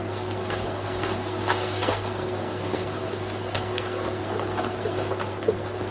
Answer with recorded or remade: remade